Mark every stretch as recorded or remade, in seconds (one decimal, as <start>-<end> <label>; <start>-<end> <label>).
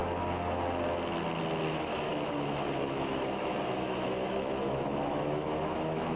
0.0-1.7 recorded; 1.7-6.2 remade